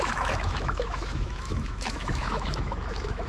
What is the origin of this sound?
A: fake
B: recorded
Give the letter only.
A